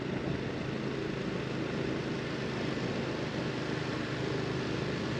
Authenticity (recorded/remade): recorded